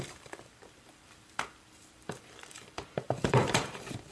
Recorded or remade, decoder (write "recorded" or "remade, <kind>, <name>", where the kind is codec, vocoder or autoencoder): remade, vocoder, BigVGAN v2